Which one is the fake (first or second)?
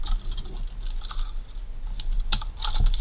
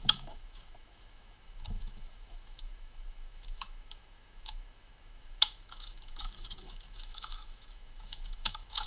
second